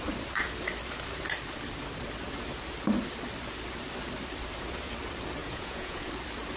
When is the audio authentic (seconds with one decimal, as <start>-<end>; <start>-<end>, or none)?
0.0-5.4; 6.1-6.6